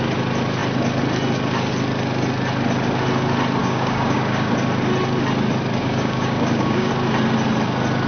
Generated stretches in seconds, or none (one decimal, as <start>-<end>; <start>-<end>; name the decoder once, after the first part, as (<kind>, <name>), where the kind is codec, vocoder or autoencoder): 3.6-4.5 (codec, DAC); 5.8-6.9